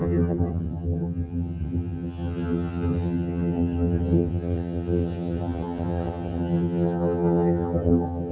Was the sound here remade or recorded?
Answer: remade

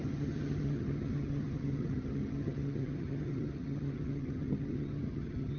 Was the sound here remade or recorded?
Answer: remade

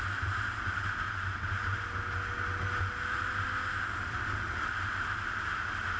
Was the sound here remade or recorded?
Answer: recorded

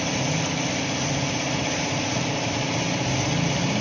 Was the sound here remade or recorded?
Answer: recorded